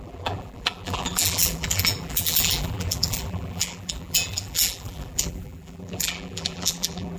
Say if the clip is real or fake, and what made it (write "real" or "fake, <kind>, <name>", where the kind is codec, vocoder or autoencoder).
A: fake, vocoder, BigVGAN v2